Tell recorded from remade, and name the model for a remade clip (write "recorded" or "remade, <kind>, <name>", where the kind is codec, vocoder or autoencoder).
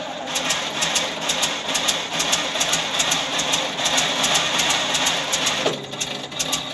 recorded